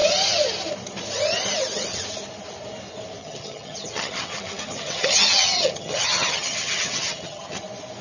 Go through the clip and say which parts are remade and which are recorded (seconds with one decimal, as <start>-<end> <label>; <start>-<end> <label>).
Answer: 0.0-3.2 recorded; 3.2-7.6 remade; 7.6-8.0 recorded